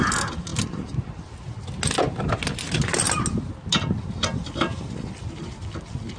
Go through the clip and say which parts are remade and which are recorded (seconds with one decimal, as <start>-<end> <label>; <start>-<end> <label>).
0.0-6.2 recorded